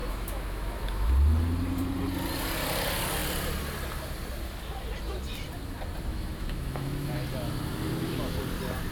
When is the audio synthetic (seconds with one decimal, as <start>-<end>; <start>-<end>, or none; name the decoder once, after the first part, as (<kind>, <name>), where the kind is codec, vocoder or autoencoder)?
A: 0.0-1.1 (autoencoder, DAC-VAE); 6.1-7.1

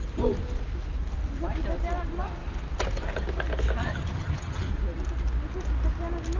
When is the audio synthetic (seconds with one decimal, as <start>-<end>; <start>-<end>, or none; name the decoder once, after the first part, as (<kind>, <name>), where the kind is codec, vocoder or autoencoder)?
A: 3.8-4.7 (vocoder, HiFi-GAN)

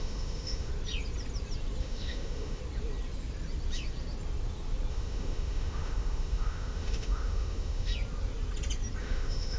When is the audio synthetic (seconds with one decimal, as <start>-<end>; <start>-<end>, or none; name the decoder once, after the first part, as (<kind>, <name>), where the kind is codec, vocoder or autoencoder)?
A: 0.0-0.7 (autoencoder, DAC-VAE); 1.8-2.6; 4.9-7.9; 9.0-9.6